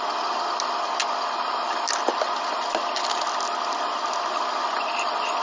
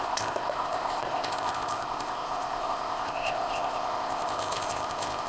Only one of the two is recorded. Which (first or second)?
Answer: first